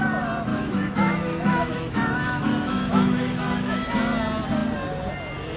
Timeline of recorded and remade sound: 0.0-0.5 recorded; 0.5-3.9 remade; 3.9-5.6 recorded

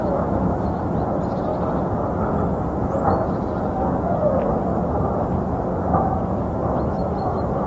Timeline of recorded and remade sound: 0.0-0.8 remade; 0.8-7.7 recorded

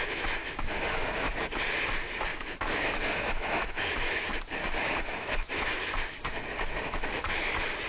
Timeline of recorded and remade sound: 0.0-0.4 recorded; 0.4-1.3 remade; 1.3-2.3 recorded; 2.3-5.8 remade; 5.8-7.9 recorded

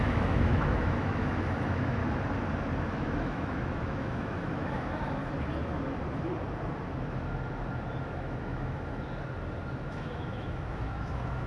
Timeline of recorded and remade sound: 0.0-2.0 remade; 2.0-2.9 recorded; 2.9-5.2 remade; 5.2-8.0 recorded; 8.0-8.9 remade; 8.9-9.8 recorded; 9.8-11.5 remade

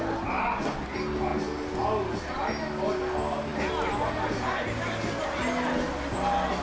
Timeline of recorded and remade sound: 0.0-6.6 recorded

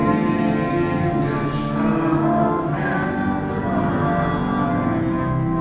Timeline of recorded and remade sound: 0.0-5.6 recorded

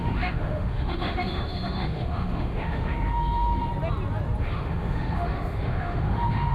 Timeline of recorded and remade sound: 0.0-3.7 remade; 3.7-4.4 recorded; 4.4-6.5 remade